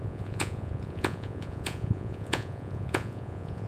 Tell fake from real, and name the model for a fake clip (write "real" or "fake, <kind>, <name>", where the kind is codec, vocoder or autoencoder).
fake, vocoder, Vocos